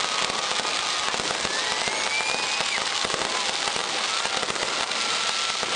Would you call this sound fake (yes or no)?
no